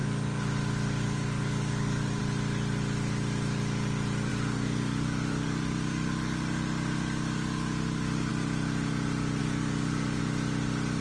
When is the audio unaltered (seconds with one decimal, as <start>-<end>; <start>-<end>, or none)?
2.2-4.3; 8.3-9.4; 10.2-11.0